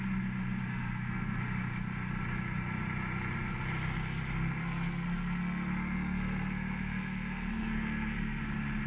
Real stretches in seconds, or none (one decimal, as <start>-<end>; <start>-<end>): 0.0-0.7; 1.4-4.6; 8.4-8.9

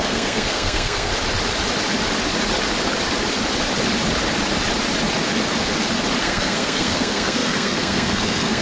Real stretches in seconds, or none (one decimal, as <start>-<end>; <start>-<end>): 1.1-6.2

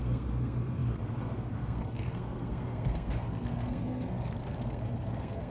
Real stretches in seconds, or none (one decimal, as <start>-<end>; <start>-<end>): none

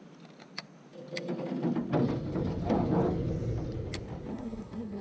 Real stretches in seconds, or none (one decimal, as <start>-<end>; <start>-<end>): 0.0-4.3